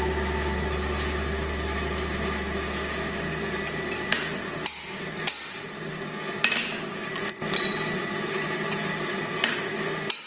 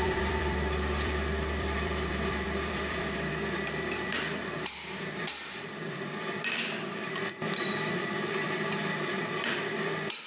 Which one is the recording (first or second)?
first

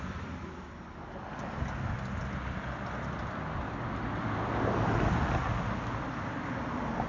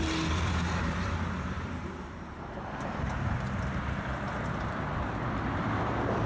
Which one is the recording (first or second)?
first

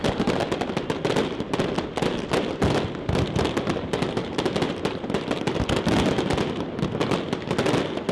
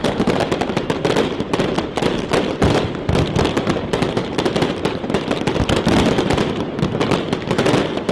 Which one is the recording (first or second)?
first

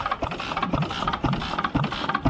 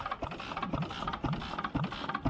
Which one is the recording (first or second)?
second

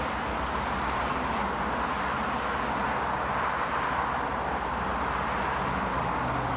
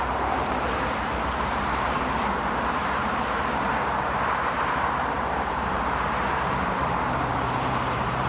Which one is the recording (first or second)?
first